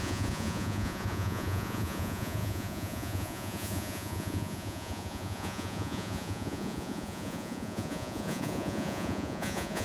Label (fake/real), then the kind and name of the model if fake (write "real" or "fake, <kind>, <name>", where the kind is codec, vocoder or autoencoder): fake, vocoder, Vocos